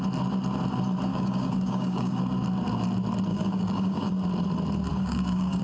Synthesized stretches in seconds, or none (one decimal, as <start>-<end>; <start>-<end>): 1.1-2.2; 3.3-4.1; 4.9-5.6